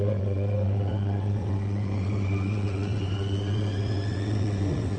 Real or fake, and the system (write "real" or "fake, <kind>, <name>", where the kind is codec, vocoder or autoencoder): fake, vocoder, WaveNeXt